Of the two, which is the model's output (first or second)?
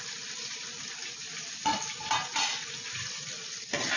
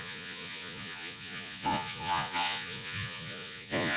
second